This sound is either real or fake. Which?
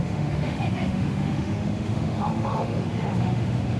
fake